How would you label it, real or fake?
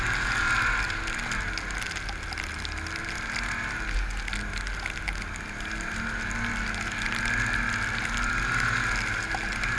real